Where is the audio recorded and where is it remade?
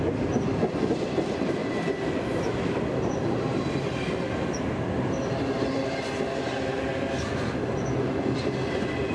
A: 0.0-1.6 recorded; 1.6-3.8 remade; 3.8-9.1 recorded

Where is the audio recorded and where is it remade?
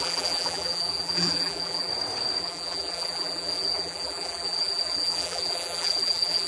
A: 0.0-1.9 remade; 1.9-2.4 recorded; 2.4-6.5 remade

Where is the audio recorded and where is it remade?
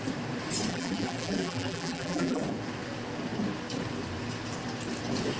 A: 0.0-0.7 recorded; 0.7-2.4 remade; 2.4-5.4 recorded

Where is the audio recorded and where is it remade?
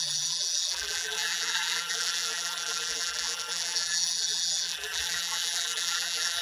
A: 0.0-6.4 remade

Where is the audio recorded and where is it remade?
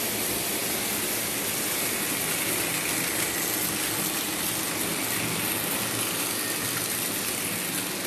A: 0.0-8.1 recorded